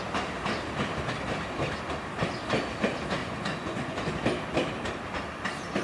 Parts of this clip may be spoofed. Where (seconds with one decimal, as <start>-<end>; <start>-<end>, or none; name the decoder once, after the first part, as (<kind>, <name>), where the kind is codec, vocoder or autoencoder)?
3.2-4.1 (vocoder, Vocos)